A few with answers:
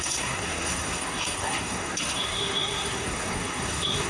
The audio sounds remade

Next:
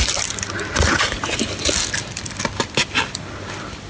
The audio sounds recorded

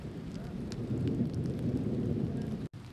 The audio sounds remade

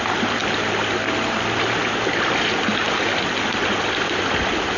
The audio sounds recorded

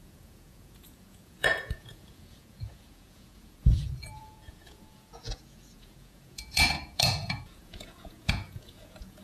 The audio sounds remade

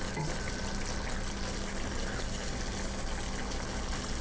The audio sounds recorded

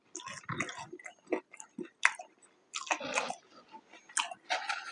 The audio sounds recorded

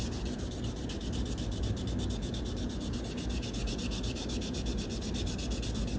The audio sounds recorded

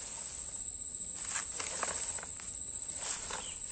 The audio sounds recorded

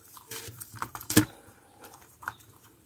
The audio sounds remade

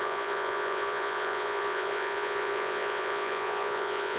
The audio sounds remade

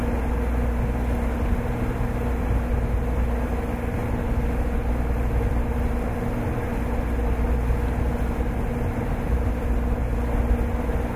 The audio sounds recorded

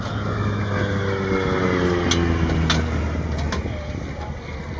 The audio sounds recorded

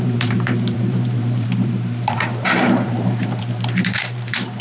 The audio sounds remade